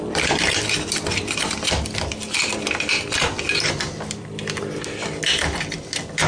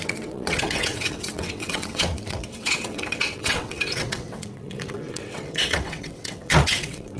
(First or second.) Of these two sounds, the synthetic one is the second